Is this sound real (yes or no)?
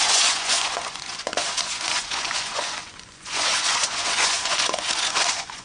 no